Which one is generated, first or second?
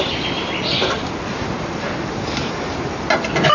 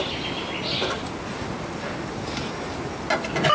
first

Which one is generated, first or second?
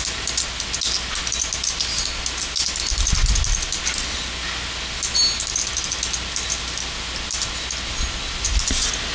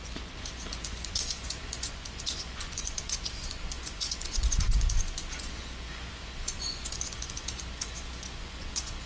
second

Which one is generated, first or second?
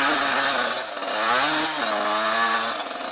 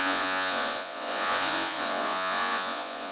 second